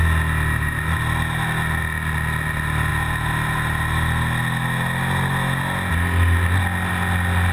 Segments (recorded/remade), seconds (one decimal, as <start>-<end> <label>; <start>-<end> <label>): 0.0-7.5 recorded